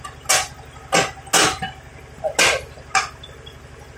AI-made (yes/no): no